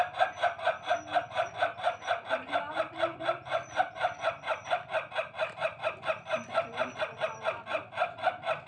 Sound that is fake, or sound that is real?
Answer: real